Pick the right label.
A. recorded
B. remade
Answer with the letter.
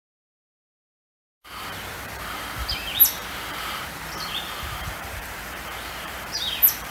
B